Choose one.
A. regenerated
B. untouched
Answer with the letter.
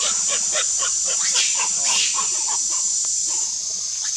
B